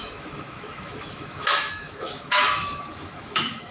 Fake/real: fake